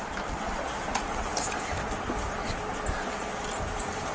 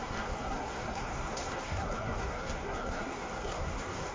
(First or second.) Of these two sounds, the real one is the first